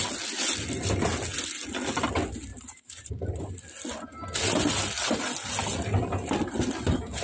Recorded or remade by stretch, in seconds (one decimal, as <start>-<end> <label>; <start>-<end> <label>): 0.0-2.5 recorded; 2.5-3.5 remade; 3.5-7.2 recorded